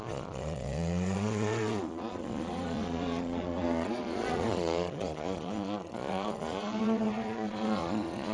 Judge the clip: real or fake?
fake